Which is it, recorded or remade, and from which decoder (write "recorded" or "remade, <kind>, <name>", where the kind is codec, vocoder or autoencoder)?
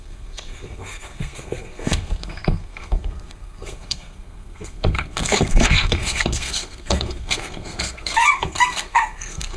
remade, codec, SNAC